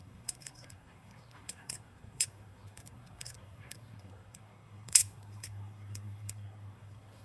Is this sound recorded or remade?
remade